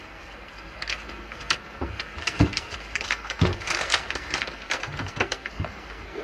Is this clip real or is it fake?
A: fake